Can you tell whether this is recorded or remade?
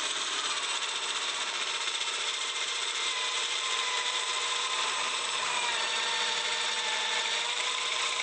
remade